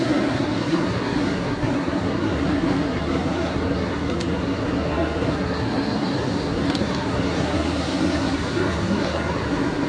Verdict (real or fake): fake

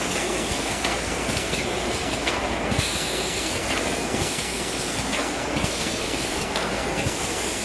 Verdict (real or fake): fake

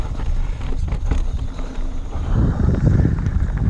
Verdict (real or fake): fake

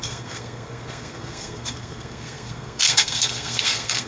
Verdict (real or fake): fake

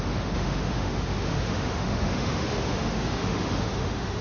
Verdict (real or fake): fake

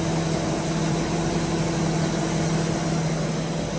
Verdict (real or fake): real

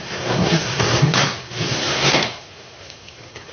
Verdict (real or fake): fake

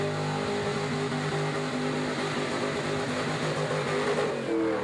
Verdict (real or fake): real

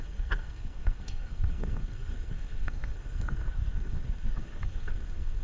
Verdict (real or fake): fake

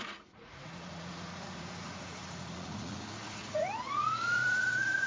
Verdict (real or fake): fake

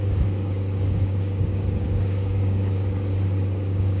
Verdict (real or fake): fake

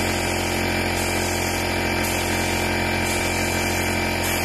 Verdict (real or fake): real